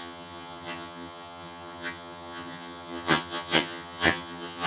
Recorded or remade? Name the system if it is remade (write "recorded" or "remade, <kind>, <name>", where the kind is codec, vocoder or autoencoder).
remade, vocoder, HiFi-GAN